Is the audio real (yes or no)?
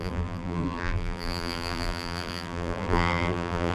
no